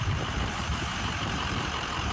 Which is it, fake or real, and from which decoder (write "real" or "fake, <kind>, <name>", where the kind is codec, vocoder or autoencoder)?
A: fake, vocoder, BigVGAN v2